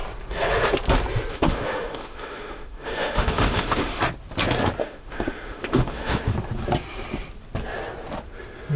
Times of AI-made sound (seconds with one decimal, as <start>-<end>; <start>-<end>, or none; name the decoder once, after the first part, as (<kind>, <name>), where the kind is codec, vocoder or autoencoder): 1.3-4.0 (autoencoder, DAC-VAE); 4.8-6.3